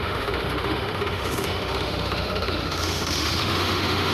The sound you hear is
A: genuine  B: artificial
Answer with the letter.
B